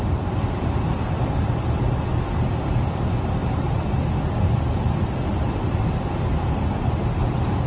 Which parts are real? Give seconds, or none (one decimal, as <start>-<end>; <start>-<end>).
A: 0.0-7.7